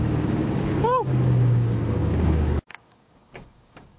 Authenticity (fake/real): fake